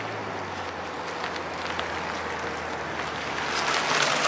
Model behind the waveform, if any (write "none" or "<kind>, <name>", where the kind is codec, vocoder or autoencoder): none